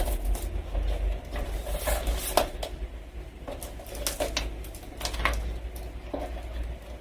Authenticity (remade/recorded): recorded